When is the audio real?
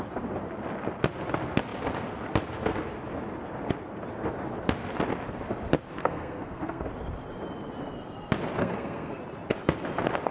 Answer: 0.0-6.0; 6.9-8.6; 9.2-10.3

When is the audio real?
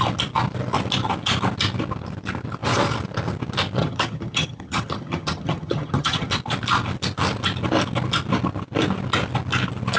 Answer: 0.0-3.8; 6.3-10.0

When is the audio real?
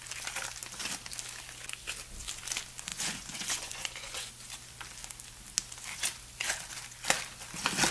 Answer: 0.0-2.9; 4.3-7.9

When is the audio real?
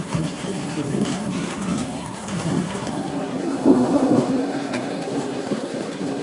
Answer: none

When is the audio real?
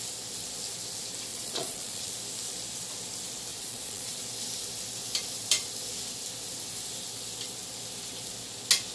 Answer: 0.0-1.3; 2.1-3.5; 4.2-8.9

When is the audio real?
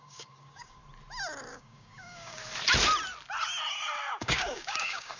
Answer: 0.8-1.5; 2.4-4.2